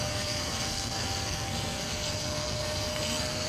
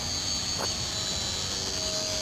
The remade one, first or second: first